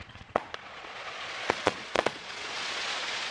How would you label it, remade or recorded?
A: remade